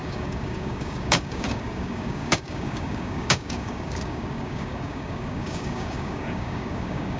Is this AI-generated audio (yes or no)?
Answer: yes